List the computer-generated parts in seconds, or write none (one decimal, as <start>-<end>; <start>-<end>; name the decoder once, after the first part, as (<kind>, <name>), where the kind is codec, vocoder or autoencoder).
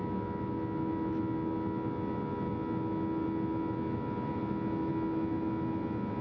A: none